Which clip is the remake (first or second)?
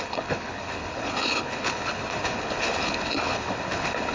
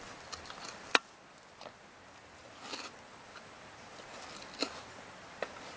first